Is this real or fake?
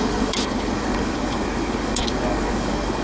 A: fake